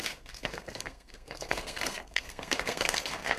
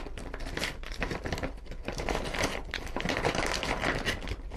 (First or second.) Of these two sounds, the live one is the second